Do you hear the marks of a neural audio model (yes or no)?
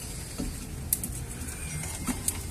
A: no